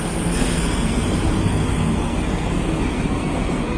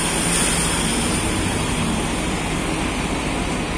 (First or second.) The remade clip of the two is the first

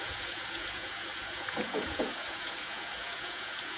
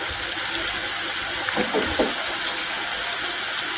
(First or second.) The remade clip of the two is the first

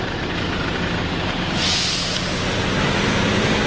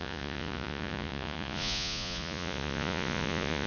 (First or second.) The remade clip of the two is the second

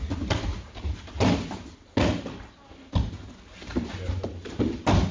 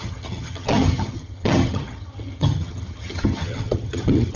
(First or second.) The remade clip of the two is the second